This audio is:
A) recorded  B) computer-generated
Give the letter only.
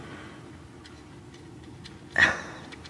A